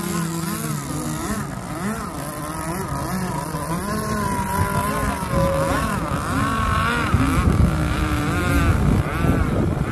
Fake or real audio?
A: real